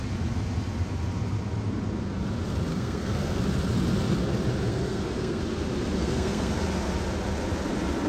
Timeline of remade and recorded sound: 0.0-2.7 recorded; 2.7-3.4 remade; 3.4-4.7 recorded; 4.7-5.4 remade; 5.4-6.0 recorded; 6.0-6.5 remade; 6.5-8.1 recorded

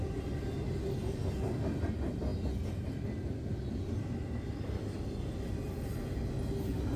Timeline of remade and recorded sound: 0.0-7.0 recorded

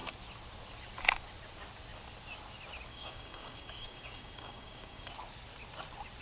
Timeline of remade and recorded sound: 0.0-2.9 recorded; 2.9-5.1 remade; 5.1-6.2 recorded

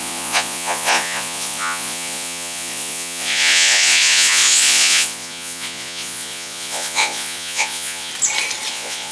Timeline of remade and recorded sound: 0.0-8.1 remade; 8.1-8.7 recorded; 8.7-9.1 remade

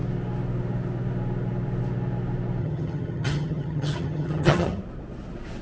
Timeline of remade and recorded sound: 0.0-2.6 recorded; 2.6-4.8 remade; 4.8-5.6 recorded

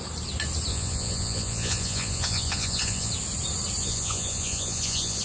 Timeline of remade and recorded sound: 0.0-0.7 recorded; 0.7-3.1 remade; 3.1-3.8 recorded; 3.8-5.2 remade

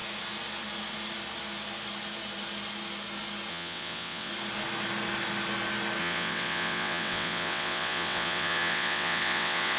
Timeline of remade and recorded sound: 0.0-3.5 recorded; 3.5-4.3 remade; 4.3-6.0 recorded; 6.0-9.8 remade